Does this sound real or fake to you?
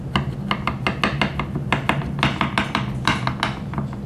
real